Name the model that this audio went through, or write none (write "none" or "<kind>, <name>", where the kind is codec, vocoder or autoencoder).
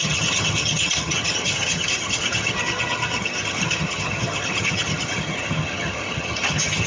vocoder, HiFi-GAN